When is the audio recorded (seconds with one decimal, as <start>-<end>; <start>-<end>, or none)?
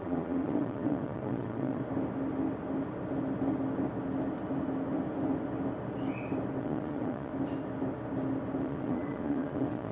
1.8-6.6; 7.3-8.6